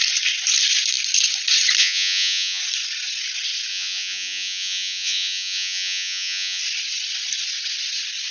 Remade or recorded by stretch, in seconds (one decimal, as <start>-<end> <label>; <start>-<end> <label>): 0.0-1.8 recorded; 1.8-2.6 remade; 2.6-3.7 recorded; 3.7-6.6 remade; 6.6-8.3 recorded